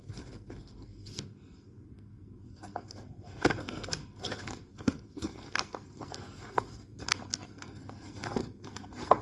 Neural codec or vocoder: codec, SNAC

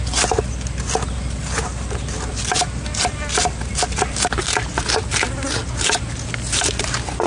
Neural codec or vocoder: none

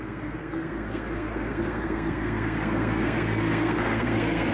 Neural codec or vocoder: codec, SNAC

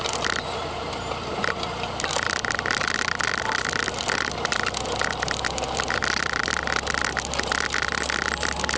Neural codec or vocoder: none